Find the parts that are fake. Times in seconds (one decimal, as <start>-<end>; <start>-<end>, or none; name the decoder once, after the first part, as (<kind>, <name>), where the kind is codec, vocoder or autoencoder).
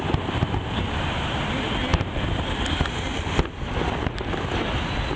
none